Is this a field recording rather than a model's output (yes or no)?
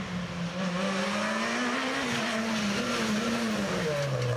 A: yes